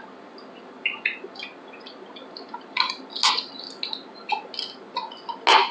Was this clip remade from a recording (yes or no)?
no